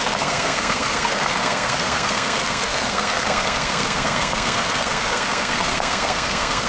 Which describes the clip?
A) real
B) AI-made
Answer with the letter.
B